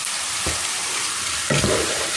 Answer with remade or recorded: remade